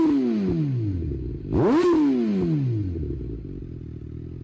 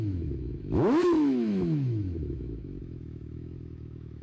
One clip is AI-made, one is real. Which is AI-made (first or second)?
second